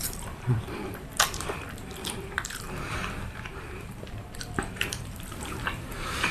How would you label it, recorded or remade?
remade